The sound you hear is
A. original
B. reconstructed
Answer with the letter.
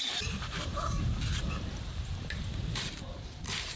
B